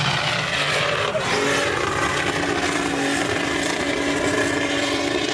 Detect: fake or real real